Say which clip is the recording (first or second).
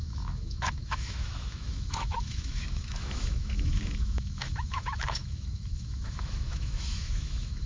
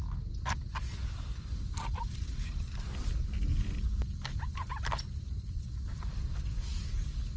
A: second